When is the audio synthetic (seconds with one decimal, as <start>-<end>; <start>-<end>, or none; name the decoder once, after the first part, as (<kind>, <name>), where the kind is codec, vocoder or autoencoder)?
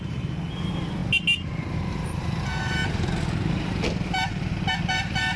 none